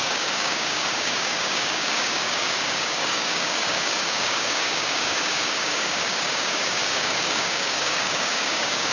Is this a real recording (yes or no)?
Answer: no